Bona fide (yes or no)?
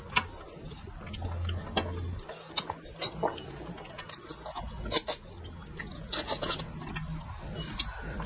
yes